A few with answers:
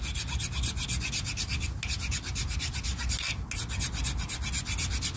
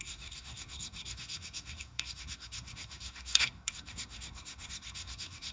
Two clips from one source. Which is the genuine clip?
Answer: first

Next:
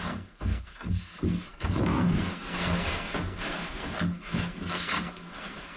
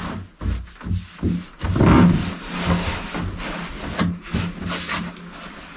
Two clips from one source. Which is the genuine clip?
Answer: second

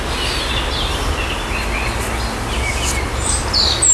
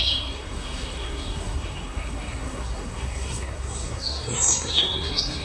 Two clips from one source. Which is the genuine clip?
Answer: first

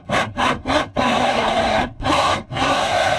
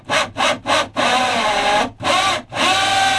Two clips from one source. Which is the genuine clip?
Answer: second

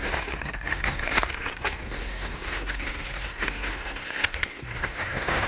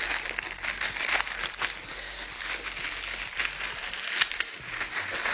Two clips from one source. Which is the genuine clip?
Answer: second